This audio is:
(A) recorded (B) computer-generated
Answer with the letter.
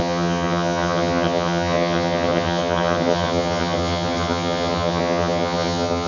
B